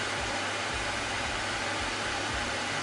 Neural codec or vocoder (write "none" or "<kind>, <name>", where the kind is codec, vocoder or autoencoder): vocoder, BigVGAN v2